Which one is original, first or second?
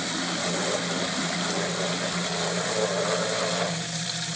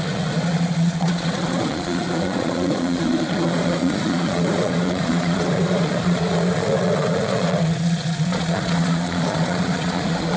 first